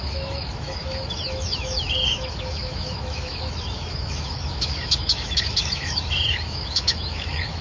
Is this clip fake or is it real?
fake